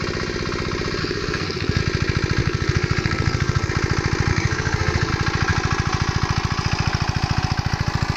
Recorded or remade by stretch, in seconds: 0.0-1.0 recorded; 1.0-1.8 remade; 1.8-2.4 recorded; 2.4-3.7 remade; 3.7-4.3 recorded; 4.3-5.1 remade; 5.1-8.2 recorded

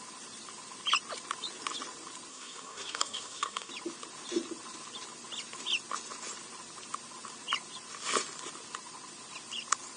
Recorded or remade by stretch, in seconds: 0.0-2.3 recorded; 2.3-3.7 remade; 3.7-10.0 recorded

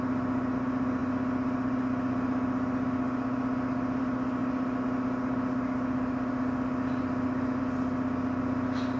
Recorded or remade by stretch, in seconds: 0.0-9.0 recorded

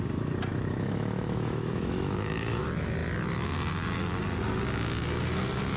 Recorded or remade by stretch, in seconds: 0.0-0.5 recorded; 0.5-2.6 remade; 2.6-5.8 recorded

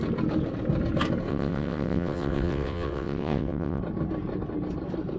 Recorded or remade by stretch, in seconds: 0.0-1.3 recorded; 1.3-3.8 remade; 3.8-5.2 recorded

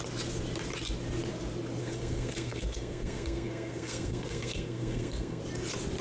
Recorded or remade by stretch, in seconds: 0.0-1.8 recorded; 1.8-5.4 remade; 5.4-6.0 recorded